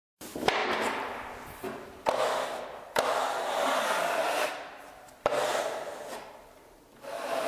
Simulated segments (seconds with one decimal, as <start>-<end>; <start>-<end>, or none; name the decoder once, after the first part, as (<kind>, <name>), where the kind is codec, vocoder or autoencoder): 0.0-0.6 (vocoder, BigVGAN v2); 4.9-5.9; 7.0-7.5